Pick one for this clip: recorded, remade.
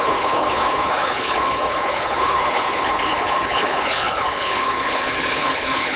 remade